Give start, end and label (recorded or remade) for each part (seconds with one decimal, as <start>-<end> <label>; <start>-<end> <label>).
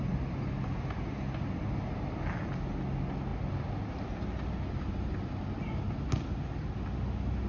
0.0-7.5 recorded